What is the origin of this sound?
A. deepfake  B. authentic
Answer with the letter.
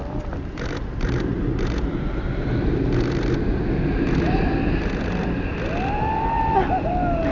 B